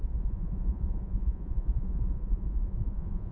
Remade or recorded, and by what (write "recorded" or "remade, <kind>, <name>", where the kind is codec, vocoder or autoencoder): remade, vocoder, Vocos